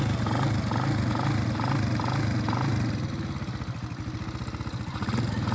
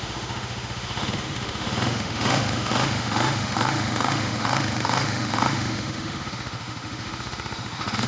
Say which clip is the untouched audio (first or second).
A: first